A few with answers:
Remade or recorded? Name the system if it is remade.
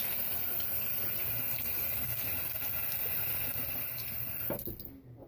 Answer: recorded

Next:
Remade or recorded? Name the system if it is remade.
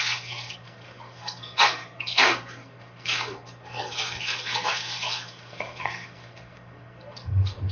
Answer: remade, codec, SNAC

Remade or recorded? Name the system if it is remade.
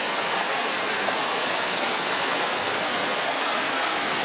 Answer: remade, codec, SNAC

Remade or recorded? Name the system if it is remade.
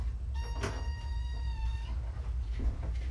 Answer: recorded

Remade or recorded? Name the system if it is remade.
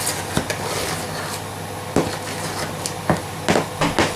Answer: recorded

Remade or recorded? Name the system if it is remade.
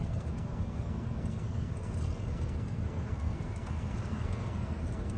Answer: remade, codec, SNAC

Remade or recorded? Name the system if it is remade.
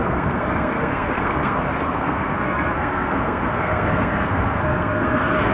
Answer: remade, codec, SNAC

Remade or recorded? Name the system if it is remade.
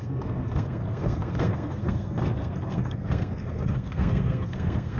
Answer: remade, codec, SNAC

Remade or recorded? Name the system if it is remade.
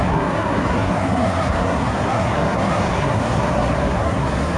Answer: remade, codec, SNAC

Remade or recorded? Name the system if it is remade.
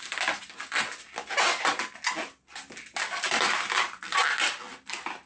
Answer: recorded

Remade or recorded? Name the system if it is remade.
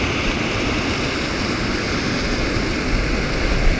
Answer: recorded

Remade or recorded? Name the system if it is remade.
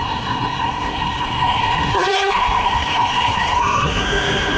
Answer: remade, codec, SNAC